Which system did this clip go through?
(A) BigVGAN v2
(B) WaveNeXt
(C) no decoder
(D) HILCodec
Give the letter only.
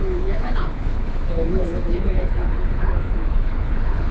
D